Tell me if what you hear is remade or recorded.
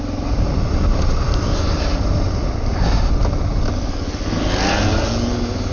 recorded